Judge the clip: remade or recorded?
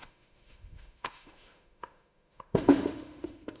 remade